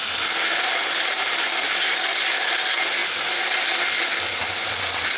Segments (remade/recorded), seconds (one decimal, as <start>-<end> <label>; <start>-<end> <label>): 0.0-5.2 recorded